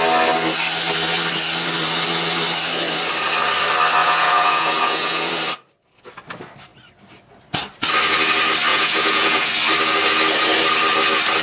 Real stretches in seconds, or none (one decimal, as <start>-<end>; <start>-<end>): 0.0-4.0; 5.3-8.7; 9.5-11.4

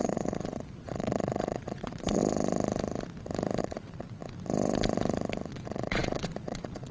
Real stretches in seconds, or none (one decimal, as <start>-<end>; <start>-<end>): 2.2-3.6; 4.2-5.5